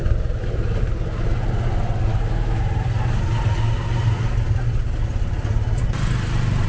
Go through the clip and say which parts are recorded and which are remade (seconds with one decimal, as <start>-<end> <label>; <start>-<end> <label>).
0.0-2.1 recorded; 2.1-2.6 remade; 2.6-6.7 recorded